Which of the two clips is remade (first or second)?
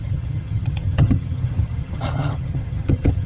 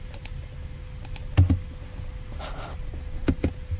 first